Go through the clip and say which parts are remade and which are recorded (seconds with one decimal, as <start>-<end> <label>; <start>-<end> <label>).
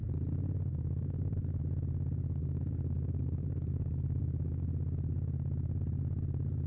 0.0-0.7 recorded; 0.7-1.6 remade; 1.6-2.4 recorded; 2.4-4.6 remade; 4.6-6.7 recorded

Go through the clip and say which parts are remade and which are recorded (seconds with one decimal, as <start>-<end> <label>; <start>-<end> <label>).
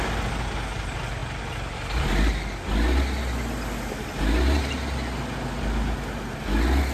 0.0-6.9 recorded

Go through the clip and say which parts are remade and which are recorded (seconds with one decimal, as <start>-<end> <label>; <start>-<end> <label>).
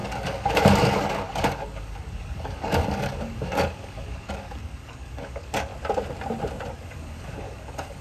0.0-5.7 remade; 5.7-6.7 recorded; 6.7-8.0 remade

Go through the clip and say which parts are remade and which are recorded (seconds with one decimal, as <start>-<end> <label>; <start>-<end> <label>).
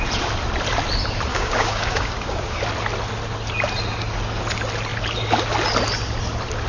0.0-1.3 recorded; 1.3-2.6 remade; 2.6-6.7 recorded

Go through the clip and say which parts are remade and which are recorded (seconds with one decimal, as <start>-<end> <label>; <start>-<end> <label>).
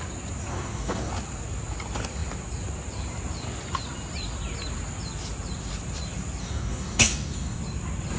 0.0-0.5 recorded; 0.5-1.1 remade; 1.1-6.4 recorded; 6.4-7.6 remade; 7.6-8.2 recorded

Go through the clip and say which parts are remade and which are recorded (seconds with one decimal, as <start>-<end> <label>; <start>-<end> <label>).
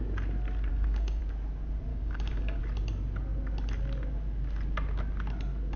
0.0-0.7 recorded; 0.7-1.2 remade; 1.2-1.9 recorded; 1.9-2.6 remade; 2.6-5.8 recorded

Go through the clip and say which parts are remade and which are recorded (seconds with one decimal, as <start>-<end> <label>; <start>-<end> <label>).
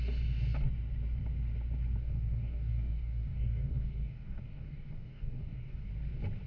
0.0-2.0 recorded; 2.0-5.9 remade; 5.9-6.5 recorded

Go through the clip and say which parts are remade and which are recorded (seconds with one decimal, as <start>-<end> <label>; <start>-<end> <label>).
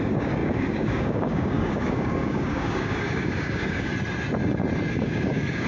0.0-3.9 remade; 3.9-4.9 recorded; 4.9-5.7 remade